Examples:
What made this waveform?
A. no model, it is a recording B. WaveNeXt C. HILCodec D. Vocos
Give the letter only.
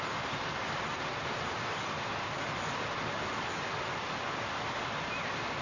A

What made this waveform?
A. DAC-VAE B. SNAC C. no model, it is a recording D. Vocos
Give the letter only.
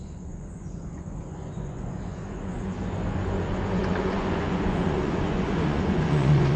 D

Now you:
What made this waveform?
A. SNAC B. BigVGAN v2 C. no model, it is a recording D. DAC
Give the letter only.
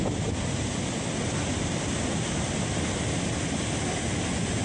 C